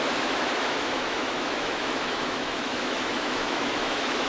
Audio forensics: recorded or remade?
remade